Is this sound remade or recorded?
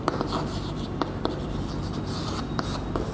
remade